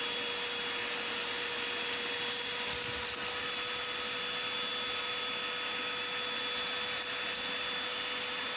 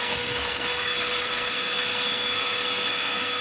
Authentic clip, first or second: first